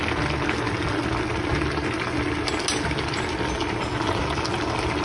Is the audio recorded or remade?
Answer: recorded